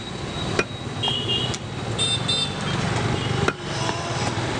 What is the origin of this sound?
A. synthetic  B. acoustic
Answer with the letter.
B